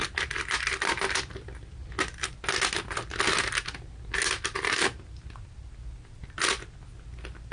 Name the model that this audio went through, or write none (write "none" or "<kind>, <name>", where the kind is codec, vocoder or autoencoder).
none